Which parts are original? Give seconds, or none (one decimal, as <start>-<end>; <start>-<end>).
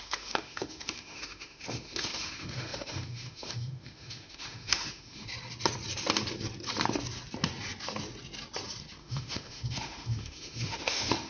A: 5.3-9.0